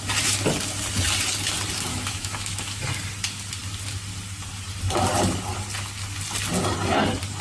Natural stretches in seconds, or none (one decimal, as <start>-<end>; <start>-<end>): 0.0-1.9; 2.8-7.4